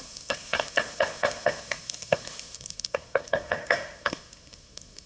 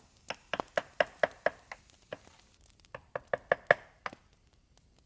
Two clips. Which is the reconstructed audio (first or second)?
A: first